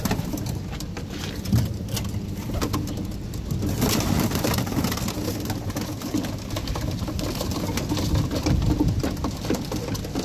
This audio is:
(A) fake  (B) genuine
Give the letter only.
B